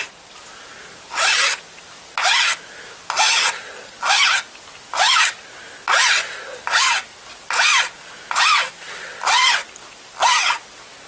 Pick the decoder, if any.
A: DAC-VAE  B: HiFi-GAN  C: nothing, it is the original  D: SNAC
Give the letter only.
C